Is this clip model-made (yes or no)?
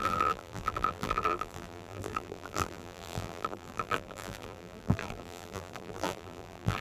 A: yes